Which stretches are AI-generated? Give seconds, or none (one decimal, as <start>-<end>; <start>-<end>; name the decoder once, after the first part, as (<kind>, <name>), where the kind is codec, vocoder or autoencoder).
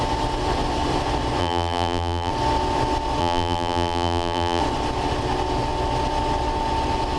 1.4-2.3 (vocoder, BigVGAN v2); 3.2-4.6